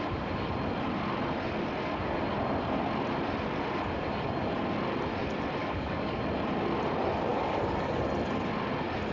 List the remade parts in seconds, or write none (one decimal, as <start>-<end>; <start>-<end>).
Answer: 5.6-6.2; 7.3-8.0